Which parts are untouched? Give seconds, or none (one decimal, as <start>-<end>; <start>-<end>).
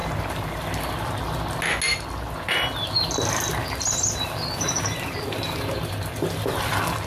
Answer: 0.6-7.1